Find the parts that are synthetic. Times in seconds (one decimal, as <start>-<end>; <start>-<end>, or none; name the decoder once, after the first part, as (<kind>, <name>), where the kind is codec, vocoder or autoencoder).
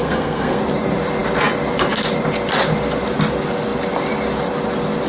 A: 0.0-0.6 (codec, SNAC)